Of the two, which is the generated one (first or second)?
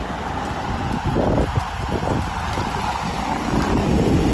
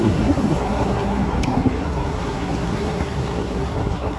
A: second